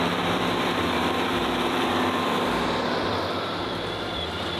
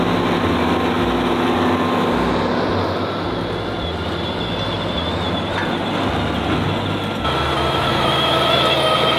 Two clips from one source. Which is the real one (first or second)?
second